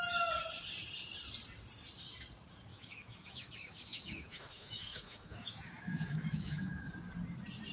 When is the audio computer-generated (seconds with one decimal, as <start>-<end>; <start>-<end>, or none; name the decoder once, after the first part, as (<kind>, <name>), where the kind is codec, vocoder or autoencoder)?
2.7-6.9 (autoencoder, DAC-VAE)